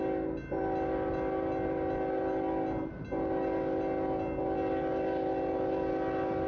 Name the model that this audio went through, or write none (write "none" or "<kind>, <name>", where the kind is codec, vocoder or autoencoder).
none